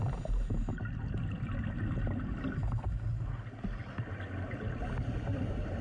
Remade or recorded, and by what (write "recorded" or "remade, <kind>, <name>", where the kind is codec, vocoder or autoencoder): recorded